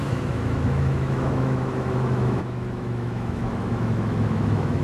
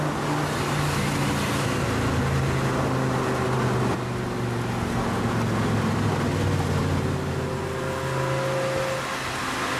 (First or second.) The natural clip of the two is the second